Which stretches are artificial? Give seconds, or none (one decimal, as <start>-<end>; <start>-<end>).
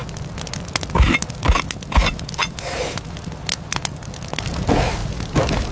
5.0-5.7